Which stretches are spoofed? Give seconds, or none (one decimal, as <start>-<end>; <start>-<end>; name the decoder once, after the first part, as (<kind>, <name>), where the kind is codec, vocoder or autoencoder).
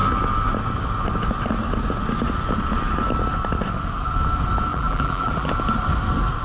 4.7-5.5 (vocoder, BigVGAN v2)